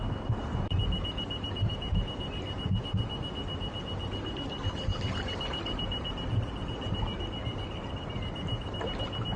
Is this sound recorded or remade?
recorded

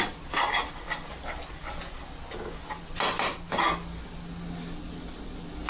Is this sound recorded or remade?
recorded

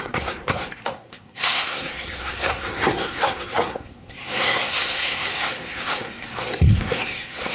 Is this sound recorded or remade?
remade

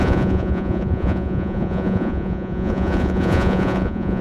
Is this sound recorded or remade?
remade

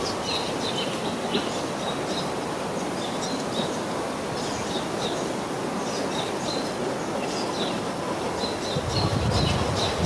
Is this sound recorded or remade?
recorded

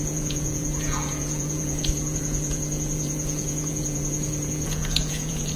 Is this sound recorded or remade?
remade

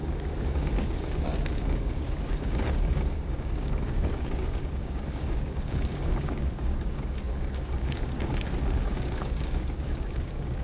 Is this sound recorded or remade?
remade